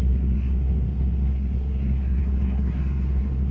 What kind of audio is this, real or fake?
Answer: fake